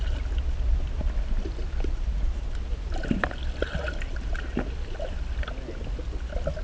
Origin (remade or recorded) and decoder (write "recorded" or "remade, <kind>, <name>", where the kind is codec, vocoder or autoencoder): recorded